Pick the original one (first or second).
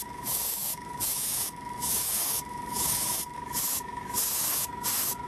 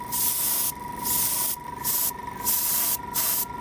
second